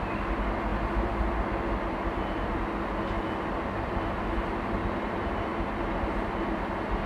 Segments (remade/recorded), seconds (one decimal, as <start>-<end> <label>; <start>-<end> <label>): 0.0-7.1 recorded